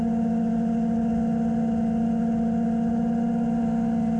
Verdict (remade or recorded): recorded